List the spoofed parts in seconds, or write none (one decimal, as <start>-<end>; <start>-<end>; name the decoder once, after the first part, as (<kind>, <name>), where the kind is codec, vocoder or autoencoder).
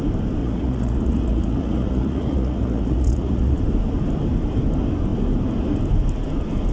0.4-3.6 (vocoder, Vocos)